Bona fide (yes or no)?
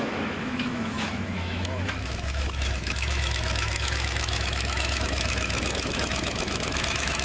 no